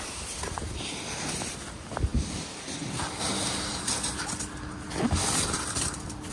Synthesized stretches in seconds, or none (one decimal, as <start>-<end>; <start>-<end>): none